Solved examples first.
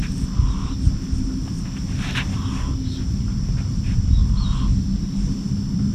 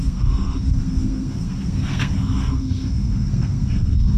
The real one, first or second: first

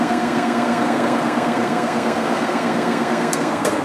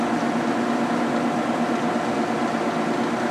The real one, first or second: second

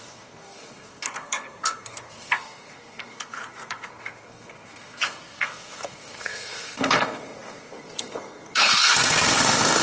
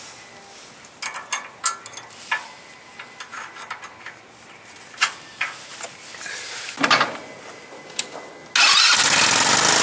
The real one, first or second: second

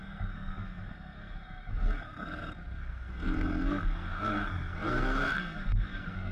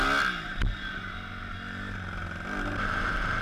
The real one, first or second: second